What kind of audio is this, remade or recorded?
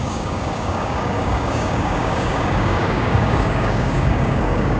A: remade